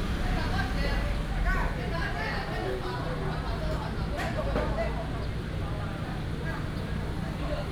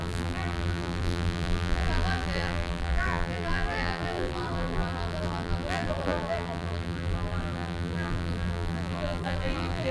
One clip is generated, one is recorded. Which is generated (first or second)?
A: second